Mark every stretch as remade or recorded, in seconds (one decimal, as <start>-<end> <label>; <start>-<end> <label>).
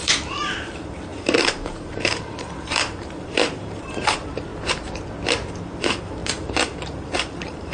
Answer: 0.0-4.5 remade; 4.5-5.8 recorded; 5.8-7.7 remade